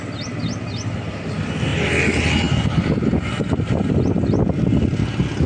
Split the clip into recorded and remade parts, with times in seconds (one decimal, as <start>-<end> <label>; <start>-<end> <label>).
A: 0.0-5.5 recorded